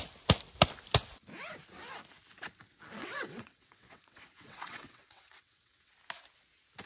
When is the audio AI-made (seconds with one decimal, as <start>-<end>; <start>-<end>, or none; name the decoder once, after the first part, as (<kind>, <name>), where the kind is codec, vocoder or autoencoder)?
3.0-5.9 (vocoder, WaveNeXt)

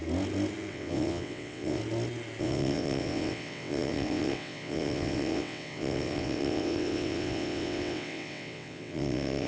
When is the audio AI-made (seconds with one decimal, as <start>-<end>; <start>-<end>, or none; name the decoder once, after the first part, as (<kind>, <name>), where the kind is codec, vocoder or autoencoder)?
0.7-1.8 (vocoder, WaveNeXt); 2.4-9.5